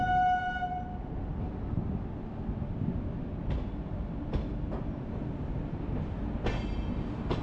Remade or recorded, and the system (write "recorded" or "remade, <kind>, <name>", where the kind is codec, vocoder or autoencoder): recorded